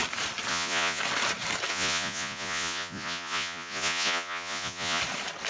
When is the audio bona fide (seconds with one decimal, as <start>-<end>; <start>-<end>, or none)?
0.0-0.5; 1.0-1.7; 5.0-5.5